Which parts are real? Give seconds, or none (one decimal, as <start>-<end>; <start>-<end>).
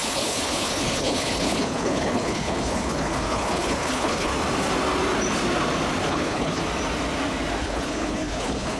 4.3-6.1; 6.6-7.6